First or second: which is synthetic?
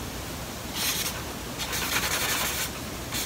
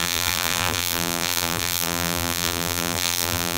second